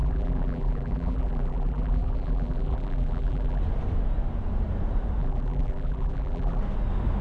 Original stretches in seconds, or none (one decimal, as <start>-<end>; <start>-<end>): 3.6-5.2; 6.6-7.2